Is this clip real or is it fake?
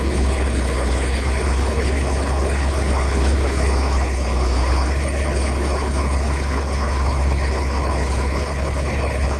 fake